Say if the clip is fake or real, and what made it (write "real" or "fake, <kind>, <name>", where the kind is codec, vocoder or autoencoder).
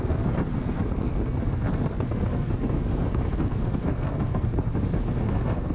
fake, codec, SNAC